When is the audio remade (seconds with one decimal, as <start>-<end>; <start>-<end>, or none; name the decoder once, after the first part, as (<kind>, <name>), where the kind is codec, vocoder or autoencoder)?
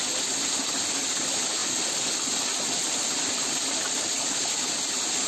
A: 1.6-4.3 (vocoder, BigVGAN v2)